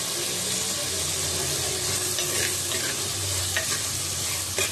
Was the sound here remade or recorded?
recorded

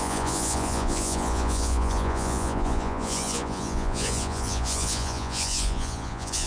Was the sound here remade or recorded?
remade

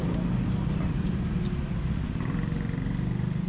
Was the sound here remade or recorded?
recorded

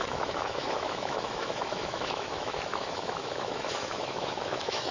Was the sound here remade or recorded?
remade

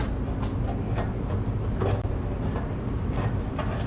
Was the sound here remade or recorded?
recorded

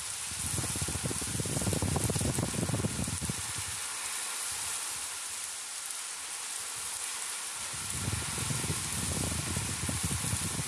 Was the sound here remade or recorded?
recorded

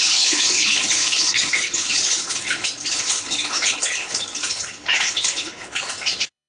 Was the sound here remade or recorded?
remade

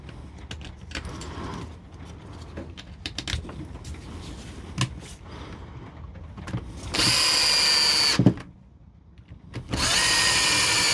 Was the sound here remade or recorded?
recorded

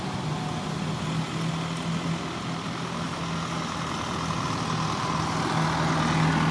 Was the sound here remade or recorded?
recorded